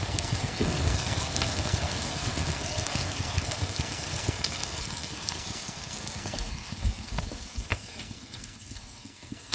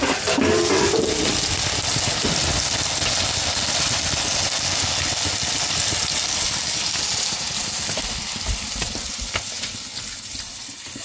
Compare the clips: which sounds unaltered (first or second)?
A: second